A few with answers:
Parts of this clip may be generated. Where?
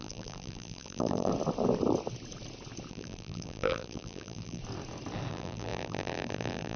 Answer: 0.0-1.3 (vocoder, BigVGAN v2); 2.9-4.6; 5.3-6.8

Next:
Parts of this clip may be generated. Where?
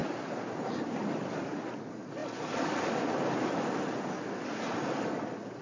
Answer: none